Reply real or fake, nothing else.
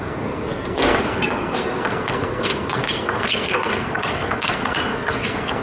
fake